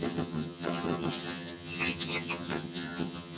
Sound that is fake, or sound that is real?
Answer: fake